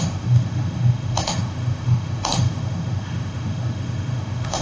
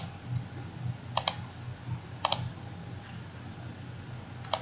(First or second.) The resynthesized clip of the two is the first